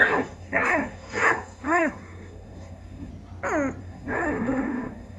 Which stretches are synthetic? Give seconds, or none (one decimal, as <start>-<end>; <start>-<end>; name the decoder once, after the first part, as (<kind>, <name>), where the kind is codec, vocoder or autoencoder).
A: 0.0-3.1 (codec, SNAC); 3.8-5.2